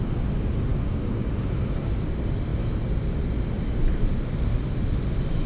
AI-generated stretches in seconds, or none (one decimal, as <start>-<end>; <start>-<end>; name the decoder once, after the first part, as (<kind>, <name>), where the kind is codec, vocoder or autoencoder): 0.7-1.3 (codec, DAC)